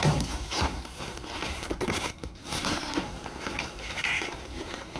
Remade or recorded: remade